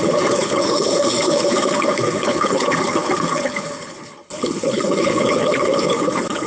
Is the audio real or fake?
fake